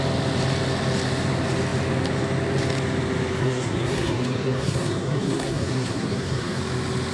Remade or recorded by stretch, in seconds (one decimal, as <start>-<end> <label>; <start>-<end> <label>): 0.0-3.4 recorded; 3.4-6.6 remade; 6.6-7.1 recorded